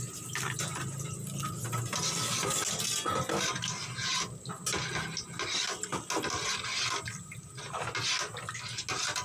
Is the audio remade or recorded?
recorded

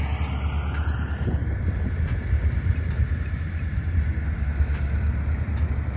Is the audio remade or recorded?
recorded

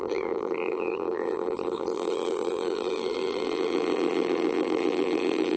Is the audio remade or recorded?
remade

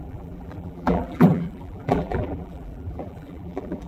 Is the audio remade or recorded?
remade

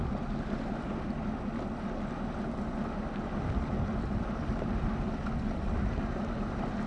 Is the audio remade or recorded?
recorded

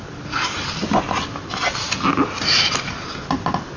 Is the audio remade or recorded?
recorded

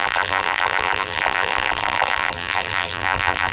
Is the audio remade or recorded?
remade